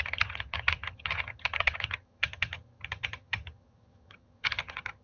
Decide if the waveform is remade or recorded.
remade